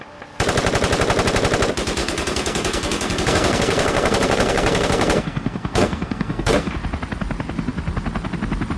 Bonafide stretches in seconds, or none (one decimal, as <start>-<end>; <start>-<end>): 0.0-2.0; 6.7-8.8